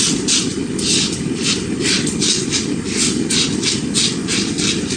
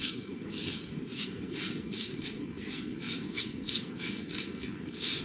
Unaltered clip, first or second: first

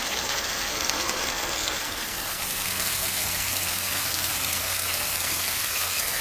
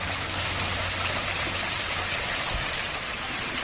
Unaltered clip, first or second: second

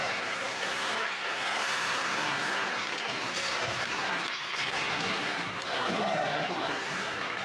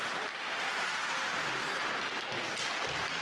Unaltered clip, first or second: second